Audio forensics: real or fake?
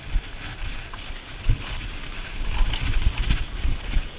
real